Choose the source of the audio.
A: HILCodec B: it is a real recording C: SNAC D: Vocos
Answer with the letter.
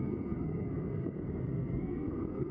C